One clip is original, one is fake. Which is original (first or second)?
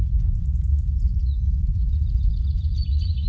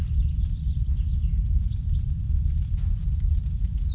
second